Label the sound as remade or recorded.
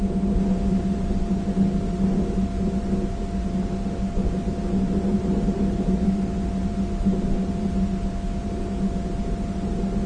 recorded